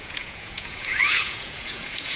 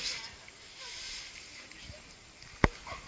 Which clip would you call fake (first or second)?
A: first